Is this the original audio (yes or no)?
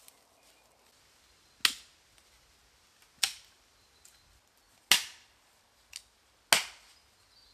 yes